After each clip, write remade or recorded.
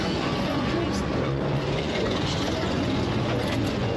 remade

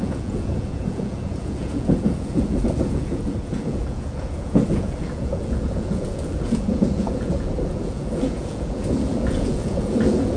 remade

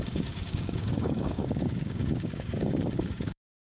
remade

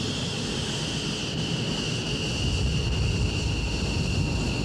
recorded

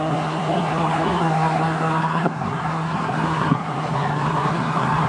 remade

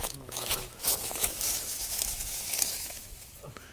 remade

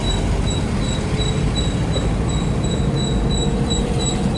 recorded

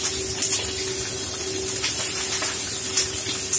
recorded